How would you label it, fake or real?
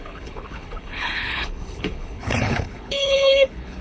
fake